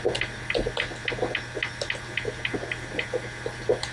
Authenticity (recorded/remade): recorded